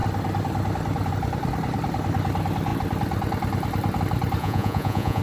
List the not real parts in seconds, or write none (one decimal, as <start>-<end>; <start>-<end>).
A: 4.4-5.2